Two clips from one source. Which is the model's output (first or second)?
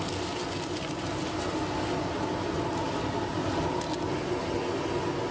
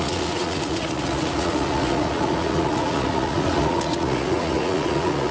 second